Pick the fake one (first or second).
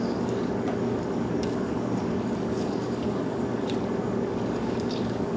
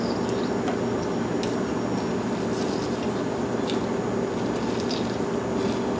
first